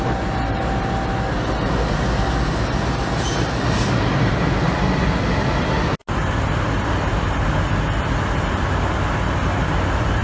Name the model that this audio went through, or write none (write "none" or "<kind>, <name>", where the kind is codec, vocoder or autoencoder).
none